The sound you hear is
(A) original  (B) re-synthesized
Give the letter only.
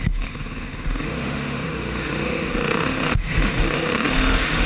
B